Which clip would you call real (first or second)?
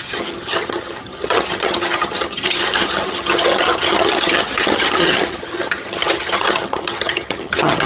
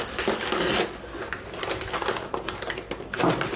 second